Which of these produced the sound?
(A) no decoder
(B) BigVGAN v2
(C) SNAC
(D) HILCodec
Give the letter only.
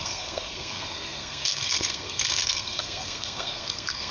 C